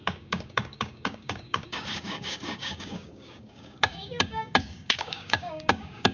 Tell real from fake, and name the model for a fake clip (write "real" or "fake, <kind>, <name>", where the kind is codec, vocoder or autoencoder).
fake, codec, DAC